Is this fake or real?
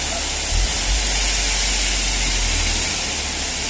real